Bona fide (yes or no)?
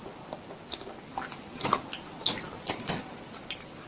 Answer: yes